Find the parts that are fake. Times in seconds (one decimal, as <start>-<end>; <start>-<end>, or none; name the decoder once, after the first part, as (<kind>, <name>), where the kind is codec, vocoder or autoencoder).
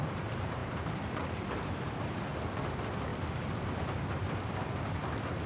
0.0-3.1 (vocoder, BigVGAN v2); 4.5-5.5